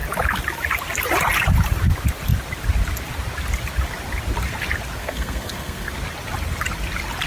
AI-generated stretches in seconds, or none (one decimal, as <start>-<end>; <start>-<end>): 5.0-5.9